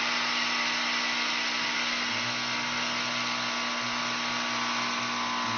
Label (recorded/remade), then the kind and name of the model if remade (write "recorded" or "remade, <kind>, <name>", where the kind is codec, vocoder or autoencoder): recorded